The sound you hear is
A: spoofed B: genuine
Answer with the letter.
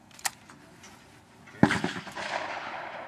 B